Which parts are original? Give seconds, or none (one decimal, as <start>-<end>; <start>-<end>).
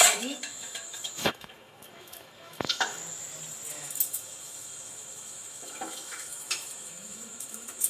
3.0-3.7